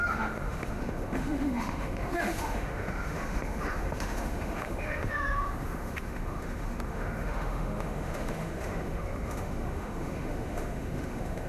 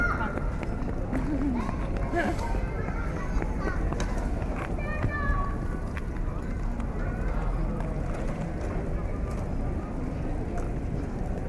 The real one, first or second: second